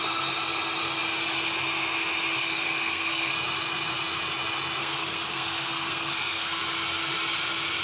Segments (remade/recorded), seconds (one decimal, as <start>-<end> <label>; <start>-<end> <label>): 0.0-2.4 recorded; 2.4-3.3 remade; 3.3-4.8 recorded; 4.8-6.6 remade; 6.6-7.8 recorded